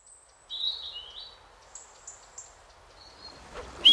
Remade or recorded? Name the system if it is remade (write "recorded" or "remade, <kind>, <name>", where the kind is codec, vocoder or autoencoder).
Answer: recorded